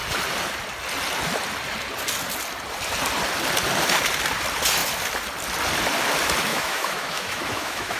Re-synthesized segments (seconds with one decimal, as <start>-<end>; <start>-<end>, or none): 6.5-8.0